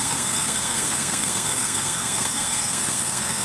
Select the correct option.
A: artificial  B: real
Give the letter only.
A